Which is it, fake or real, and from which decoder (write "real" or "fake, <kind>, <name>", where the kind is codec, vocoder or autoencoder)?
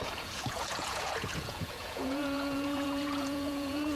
fake, vocoder, Vocos